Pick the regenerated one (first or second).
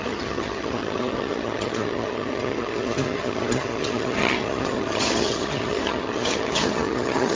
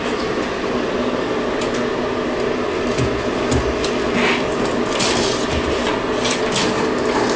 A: first